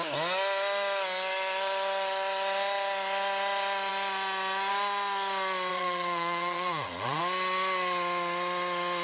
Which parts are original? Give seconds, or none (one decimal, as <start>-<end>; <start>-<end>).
0.0-5.7; 7.2-9.0